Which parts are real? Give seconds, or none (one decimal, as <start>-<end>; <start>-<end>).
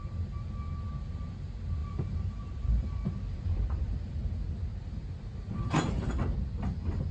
0.0-1.8; 6.1-7.1